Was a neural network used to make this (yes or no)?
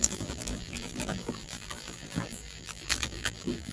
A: yes